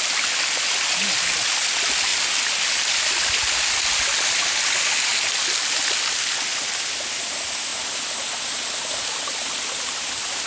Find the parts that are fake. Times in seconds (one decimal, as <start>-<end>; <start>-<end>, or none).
none